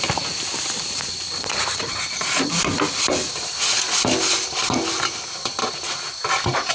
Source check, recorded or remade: recorded